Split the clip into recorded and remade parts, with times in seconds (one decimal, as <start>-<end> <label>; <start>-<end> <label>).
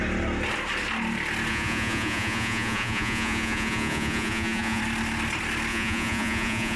0.0-1.5 recorded; 1.5-4.8 remade; 4.8-5.7 recorded; 5.7-6.8 remade